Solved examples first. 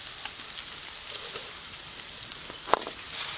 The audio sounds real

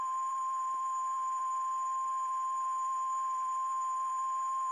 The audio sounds fake